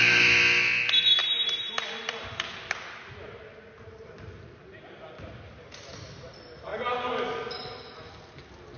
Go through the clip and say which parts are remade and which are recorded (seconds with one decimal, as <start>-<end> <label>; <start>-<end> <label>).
0.0-8.8 recorded